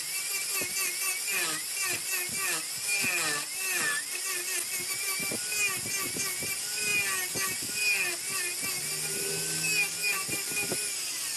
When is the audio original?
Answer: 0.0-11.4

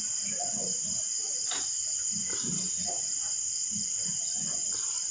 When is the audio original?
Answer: 1.4-4.5

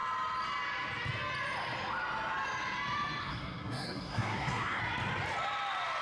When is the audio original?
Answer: 0.0-3.2; 4.8-6.0

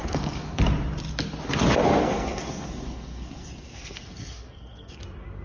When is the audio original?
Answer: 0.6-1.8; 5.0-5.4

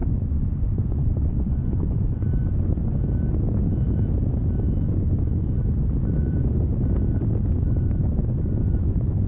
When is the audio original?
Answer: 3.0-4.8; 5.6-6.2; 6.7-7.5

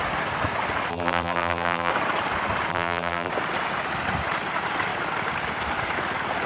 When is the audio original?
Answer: 0.0-0.9; 1.9-2.7; 3.3-6.5